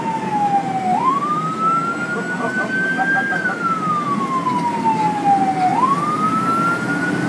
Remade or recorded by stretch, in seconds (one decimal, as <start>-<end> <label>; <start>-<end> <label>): 0.0-7.3 recorded